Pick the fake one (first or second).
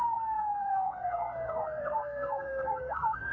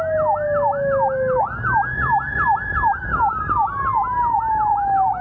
first